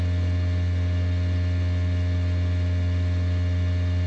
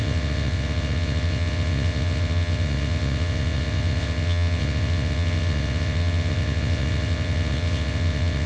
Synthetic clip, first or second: second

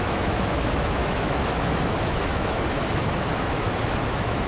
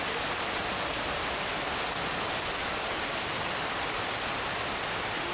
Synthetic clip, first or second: first